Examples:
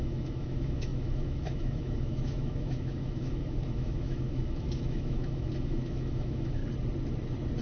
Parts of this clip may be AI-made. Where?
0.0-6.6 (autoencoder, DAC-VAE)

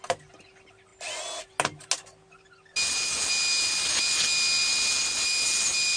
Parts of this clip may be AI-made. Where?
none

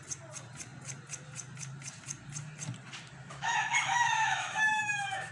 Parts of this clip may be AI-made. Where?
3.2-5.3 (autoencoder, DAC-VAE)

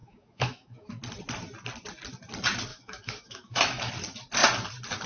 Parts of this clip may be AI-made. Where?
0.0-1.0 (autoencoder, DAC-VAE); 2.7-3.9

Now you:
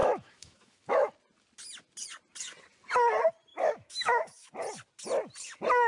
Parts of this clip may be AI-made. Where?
0.0-1.1 (autoencoder, DAC-VAE); 3.5-4.5

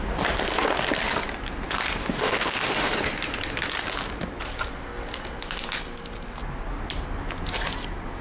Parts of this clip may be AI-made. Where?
2.0-2.9 (autoencoder, DAC-VAE)

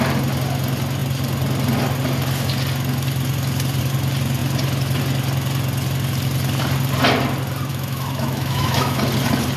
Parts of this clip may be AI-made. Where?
7.7-9.0 (autoencoder, DAC-VAE)